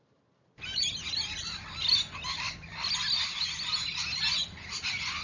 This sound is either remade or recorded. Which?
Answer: recorded